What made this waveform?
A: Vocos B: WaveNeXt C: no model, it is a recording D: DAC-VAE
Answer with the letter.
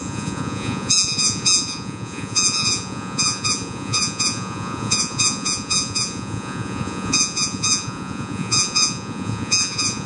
A